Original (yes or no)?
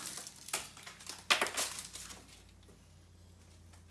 yes